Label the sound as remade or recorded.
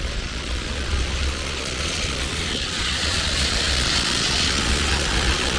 remade